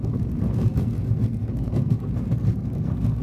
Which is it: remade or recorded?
remade